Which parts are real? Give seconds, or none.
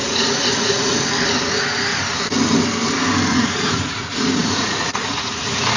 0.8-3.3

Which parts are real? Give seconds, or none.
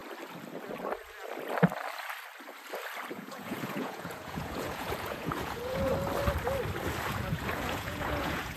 0.0-3.1; 5.9-7.1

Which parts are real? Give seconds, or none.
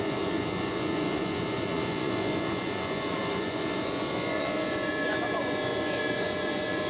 none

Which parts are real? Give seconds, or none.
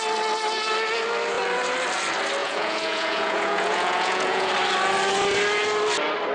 0.0-2.4; 4.5-6.3